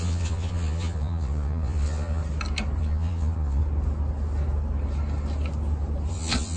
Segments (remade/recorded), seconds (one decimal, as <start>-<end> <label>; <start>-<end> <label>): 0.0-2.2 remade; 2.2-2.8 recorded; 2.8-3.6 remade; 3.6-6.1 recorded; 6.1-6.6 remade